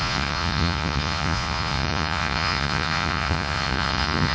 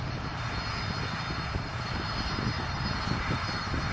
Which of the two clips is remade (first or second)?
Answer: first